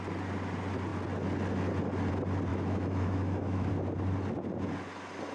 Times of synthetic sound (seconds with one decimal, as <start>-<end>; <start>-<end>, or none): 2.5-3.7